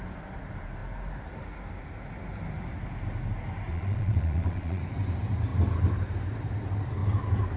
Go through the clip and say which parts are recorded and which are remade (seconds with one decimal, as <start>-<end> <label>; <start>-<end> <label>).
0.0-3.7 recorded; 3.7-4.8 remade; 4.8-7.6 recorded